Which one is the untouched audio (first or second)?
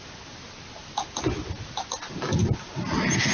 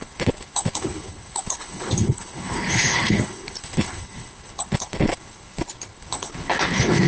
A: first